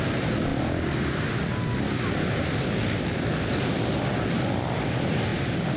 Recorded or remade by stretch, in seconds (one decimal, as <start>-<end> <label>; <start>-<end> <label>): 0.0-5.8 recorded